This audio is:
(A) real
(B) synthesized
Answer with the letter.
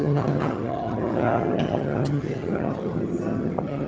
B